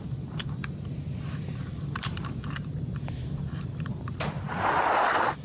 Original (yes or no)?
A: yes